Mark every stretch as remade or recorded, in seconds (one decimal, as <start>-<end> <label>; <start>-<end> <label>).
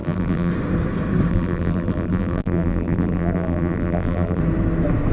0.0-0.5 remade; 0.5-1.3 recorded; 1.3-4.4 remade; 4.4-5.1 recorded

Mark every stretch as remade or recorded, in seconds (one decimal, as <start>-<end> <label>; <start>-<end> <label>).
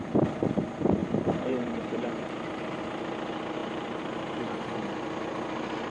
0.0-1.0 recorded; 1.0-2.8 remade; 2.8-3.6 recorded; 3.6-5.2 remade; 5.2-5.9 recorded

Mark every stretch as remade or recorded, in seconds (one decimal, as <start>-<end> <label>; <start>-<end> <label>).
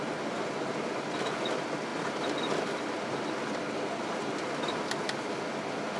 0.0-6.0 recorded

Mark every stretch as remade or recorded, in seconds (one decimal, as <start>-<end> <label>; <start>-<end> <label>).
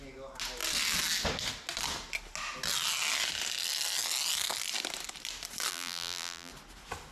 0.0-5.7 recorded; 5.7-6.5 remade; 6.5-7.1 recorded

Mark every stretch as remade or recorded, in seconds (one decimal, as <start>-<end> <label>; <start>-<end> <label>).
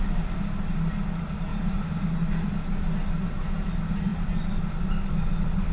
0.0-1.5 recorded; 1.5-2.0 remade; 2.0-5.7 recorded